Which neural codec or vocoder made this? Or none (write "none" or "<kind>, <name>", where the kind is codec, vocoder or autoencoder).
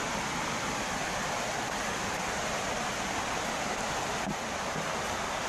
none